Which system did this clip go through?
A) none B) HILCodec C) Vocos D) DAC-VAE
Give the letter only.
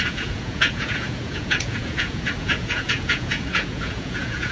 C